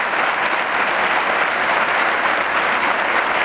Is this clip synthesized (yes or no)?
no